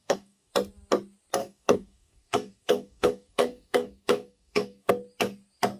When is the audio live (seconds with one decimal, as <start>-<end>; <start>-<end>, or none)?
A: 0.5-1.4; 4.9-5.8